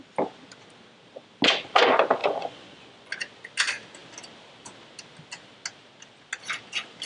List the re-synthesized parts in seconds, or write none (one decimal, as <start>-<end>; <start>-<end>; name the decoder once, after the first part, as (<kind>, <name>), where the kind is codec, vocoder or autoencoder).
2.2-3.1 (vocoder, Vocos)